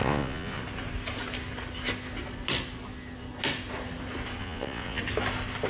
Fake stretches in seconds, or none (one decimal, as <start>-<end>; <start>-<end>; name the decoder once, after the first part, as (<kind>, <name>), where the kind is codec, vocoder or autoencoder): 0.0-0.6 (vocoder, Vocos); 4.4-5.0